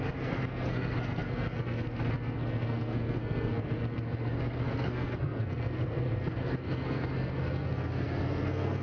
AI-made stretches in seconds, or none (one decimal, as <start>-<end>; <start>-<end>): 0.0-8.8